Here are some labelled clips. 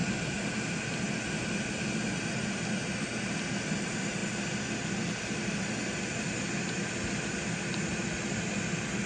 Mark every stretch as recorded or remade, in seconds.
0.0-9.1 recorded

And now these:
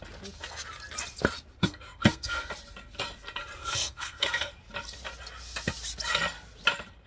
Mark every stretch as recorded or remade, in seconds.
0.0-1.6 recorded; 1.6-2.5 remade; 2.5-3.6 recorded; 3.6-4.5 remade; 4.5-7.1 recorded